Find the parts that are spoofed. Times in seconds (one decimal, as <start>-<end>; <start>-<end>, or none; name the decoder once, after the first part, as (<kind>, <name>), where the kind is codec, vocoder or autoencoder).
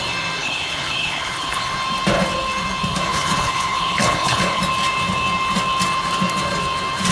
0.4-1.7 (codec, HILCodec); 2.9-4.6